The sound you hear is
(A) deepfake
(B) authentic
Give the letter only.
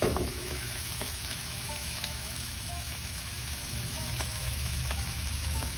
A